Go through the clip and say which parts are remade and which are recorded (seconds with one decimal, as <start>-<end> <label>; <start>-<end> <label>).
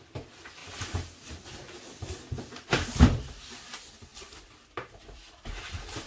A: 0.0-0.6 remade; 0.6-2.7 recorded; 2.7-6.1 remade